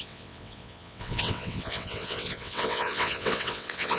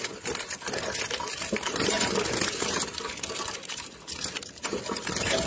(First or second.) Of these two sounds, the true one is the second